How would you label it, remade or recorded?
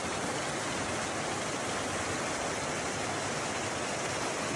recorded